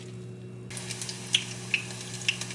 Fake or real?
real